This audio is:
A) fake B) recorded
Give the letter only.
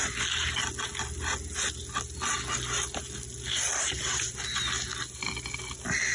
B